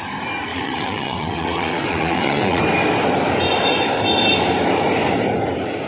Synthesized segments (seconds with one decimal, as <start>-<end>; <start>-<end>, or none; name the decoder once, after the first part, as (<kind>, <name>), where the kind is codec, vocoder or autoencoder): 0.5-2.6 (vocoder, WaveNeXt)